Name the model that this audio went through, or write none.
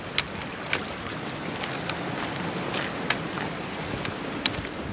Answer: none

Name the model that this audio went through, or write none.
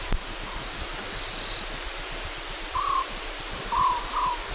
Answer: none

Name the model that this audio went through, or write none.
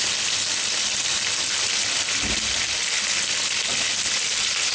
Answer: none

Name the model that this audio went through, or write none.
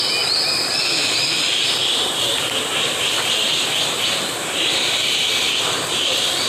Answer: vocoder, BigVGAN v2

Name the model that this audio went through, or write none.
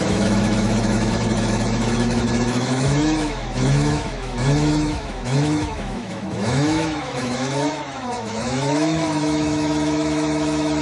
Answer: autoencoder, DAC-VAE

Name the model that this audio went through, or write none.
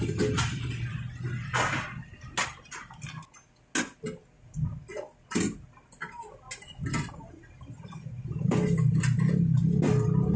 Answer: none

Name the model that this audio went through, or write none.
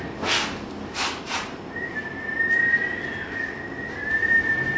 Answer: none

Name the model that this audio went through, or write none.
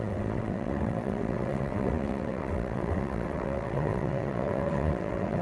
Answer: vocoder, WaveNeXt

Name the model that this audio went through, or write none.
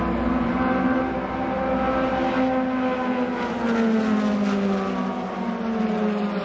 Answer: none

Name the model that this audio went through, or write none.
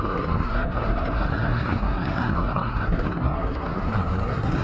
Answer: codec, SNAC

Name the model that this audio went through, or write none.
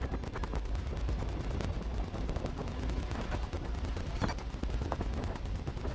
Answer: none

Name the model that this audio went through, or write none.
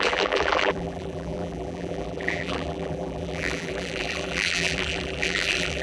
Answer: vocoder, BigVGAN v2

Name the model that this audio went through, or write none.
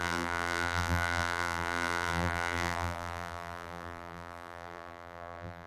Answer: vocoder, BigVGAN v2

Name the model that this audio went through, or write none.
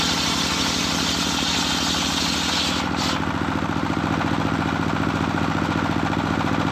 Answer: none